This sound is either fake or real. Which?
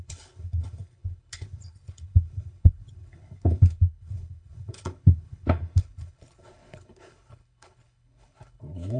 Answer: fake